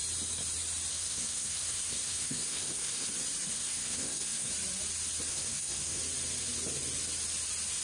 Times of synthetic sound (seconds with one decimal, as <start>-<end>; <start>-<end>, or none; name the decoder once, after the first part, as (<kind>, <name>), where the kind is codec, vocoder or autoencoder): 0.9-3.1 (codec, SNAC); 3.5-4.5; 5.3-6.0